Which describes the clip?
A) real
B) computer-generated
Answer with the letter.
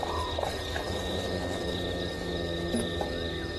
A